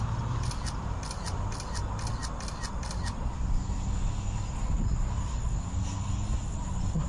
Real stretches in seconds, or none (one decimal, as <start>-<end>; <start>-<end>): 0.0-7.1